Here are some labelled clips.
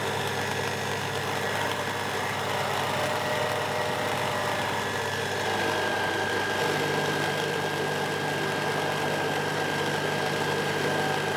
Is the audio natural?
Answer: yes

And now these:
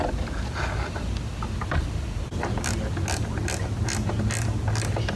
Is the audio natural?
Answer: yes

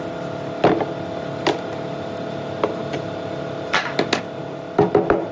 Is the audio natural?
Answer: yes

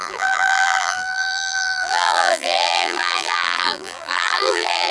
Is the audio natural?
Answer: no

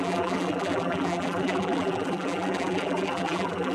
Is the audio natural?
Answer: no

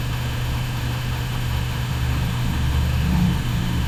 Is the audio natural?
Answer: no